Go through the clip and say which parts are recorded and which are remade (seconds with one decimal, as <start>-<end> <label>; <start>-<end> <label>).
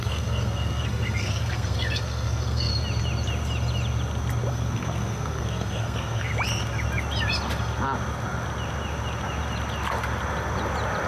0.0-2.7 remade; 2.7-4.5 recorded; 4.5-6.3 remade; 6.3-11.1 recorded